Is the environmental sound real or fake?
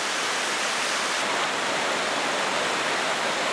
real